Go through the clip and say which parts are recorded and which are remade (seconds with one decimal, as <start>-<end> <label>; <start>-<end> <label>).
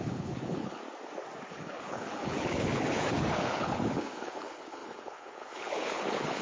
0.0-0.8 remade; 0.8-1.5 recorded; 1.5-6.4 remade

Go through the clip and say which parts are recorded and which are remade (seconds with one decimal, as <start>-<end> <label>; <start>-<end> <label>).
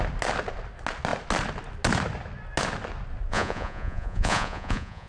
0.0-3.3 recorded; 3.3-5.1 remade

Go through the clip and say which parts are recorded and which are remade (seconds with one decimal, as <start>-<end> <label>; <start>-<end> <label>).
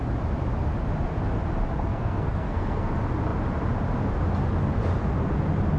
0.0-1.9 recorded; 1.9-2.9 remade; 2.9-5.8 recorded